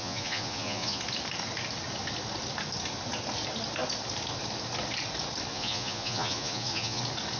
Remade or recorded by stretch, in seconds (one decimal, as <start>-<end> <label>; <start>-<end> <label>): 0.0-1.0 remade; 1.0-5.5 recorded; 5.5-7.0 remade; 7.0-7.4 recorded